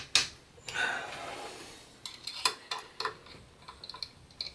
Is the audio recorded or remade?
recorded